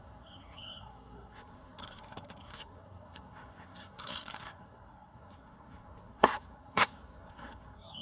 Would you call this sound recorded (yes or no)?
no